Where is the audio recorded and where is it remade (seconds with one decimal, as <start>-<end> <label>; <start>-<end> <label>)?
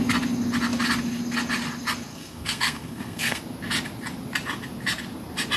0.0-2.1 recorded; 2.1-3.4 remade; 3.4-5.6 recorded